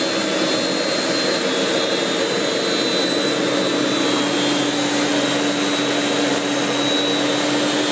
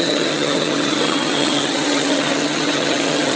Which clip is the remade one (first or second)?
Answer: second